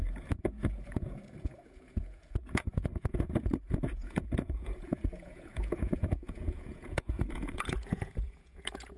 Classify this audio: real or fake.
fake